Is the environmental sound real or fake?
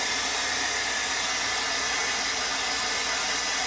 real